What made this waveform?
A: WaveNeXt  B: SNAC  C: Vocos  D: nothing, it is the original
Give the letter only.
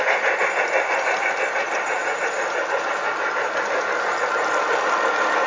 D